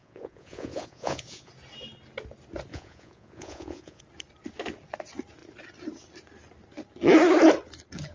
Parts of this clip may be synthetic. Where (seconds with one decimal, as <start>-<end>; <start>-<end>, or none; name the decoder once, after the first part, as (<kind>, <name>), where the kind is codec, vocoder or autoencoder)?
0.0-1.5 (vocoder, Vocos); 2.7-4.0